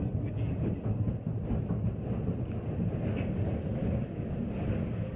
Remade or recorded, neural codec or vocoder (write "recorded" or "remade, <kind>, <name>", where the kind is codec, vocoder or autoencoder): recorded